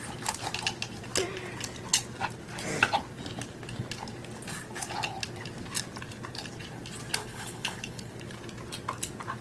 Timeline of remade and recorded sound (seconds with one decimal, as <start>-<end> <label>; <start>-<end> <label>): 0.0-7.2 recorded; 7.2-8.1 remade; 8.1-9.4 recorded